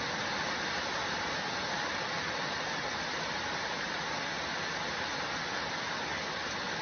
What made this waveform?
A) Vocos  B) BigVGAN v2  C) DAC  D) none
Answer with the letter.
D